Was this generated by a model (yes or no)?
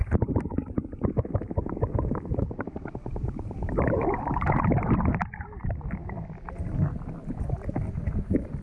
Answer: no